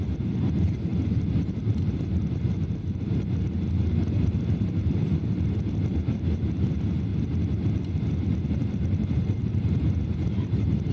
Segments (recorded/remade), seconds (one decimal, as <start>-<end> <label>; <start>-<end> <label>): 0.0-7.1 remade; 7.1-8.5 recorded; 8.5-10.9 remade